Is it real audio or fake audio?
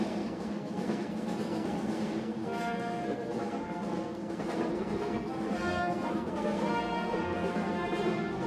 fake